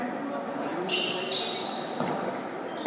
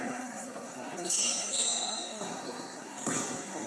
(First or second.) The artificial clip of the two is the second